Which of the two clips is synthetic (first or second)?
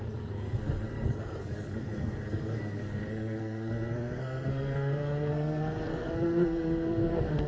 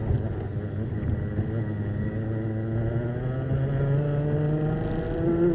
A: first